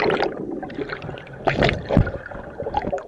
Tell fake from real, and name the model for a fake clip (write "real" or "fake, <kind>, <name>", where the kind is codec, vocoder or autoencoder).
fake, vocoder, BigVGAN v2